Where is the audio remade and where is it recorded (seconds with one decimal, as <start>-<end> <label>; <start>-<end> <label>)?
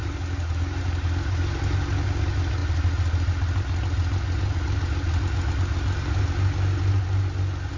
0.0-7.8 recorded